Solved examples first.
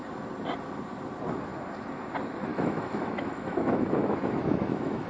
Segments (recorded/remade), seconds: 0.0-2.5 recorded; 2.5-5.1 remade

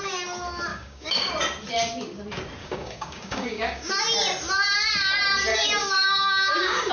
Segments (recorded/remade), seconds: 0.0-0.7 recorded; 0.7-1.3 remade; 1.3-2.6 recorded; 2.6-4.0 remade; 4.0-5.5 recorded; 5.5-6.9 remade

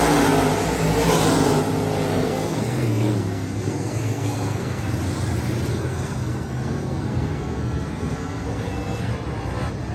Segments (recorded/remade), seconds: 0.0-2.1 recorded; 2.1-5.0 remade; 5.0-5.7 recorded; 5.7-9.1 remade; 9.1-9.9 recorded